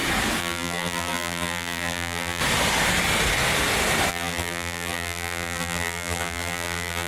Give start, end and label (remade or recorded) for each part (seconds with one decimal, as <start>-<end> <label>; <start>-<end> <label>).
0.0-0.4 recorded; 0.4-2.4 remade; 2.4-4.1 recorded; 4.1-7.1 remade